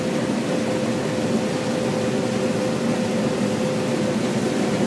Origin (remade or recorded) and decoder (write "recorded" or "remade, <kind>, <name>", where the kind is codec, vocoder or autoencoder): recorded